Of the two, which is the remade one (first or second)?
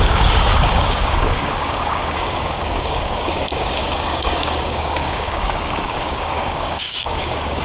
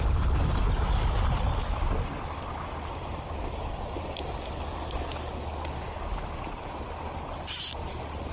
first